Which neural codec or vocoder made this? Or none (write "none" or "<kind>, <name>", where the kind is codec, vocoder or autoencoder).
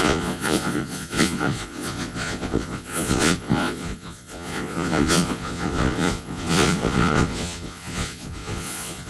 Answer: vocoder, Vocos